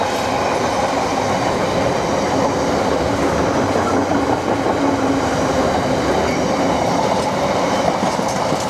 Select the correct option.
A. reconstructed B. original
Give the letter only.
B